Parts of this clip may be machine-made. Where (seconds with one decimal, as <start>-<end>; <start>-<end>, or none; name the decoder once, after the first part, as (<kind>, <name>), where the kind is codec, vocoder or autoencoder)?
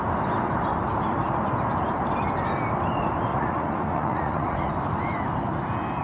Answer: 3.3-4.7 (vocoder, Vocos)